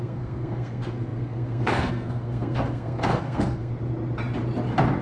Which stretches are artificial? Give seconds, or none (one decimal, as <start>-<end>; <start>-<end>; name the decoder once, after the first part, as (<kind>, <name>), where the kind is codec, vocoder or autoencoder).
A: 0.0-3.7 (codec, SNAC)